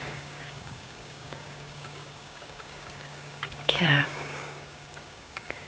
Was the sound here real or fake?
fake